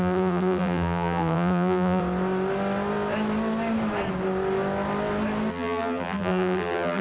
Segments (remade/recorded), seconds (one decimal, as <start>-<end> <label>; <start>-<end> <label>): 0.0-2.0 remade; 2.0-5.5 recorded; 5.5-7.0 remade